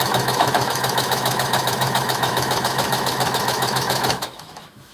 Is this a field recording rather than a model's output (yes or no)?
no